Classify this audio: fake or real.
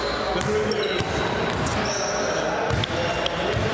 real